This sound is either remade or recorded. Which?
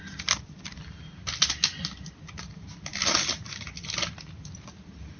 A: recorded